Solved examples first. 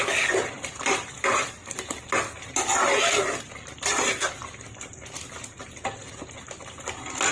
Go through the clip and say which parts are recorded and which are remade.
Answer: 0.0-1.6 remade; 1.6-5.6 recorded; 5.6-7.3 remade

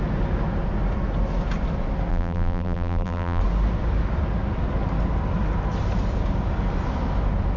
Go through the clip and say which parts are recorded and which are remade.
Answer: 0.0-2.1 recorded; 2.1-3.4 remade; 3.4-7.6 recorded